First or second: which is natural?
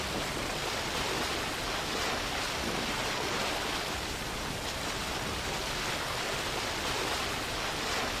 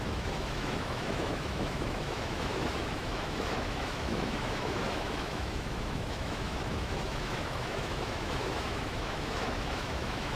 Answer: first